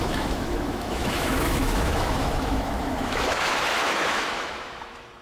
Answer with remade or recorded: remade